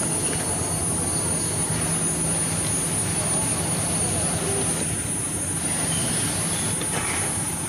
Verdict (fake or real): real